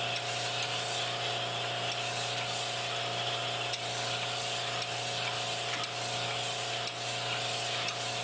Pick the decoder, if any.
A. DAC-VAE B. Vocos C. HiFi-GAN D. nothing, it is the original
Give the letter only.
D